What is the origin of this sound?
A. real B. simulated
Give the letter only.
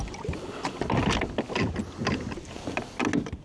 A